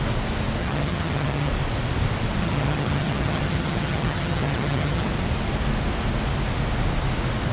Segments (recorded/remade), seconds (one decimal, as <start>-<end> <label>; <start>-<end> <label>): 0.0-0.6 recorded; 0.6-1.5 remade; 1.5-2.4 recorded; 2.4-5.1 remade; 5.1-7.5 recorded